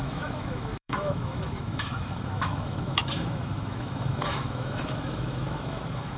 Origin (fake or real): fake